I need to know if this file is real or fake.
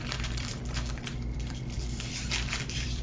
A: fake